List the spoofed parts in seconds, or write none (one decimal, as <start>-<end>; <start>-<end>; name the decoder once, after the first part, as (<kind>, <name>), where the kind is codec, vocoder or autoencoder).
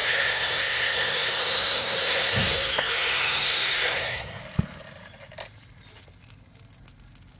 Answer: 0.0-4.4 (codec, SNAC)